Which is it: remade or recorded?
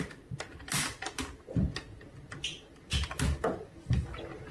recorded